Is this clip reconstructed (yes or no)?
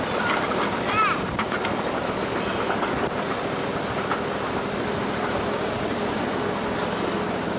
no